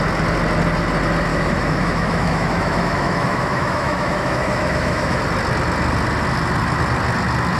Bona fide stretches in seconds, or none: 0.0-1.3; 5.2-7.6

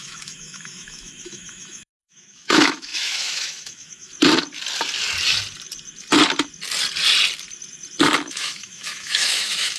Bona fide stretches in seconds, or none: 4.1-8.3

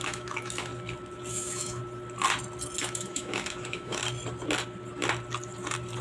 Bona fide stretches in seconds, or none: 0.7-1.3; 1.8-2.8; 4.0-6.0